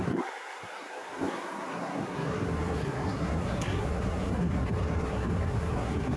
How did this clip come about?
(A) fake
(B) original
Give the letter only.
A